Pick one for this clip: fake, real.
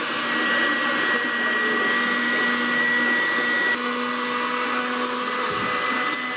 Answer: real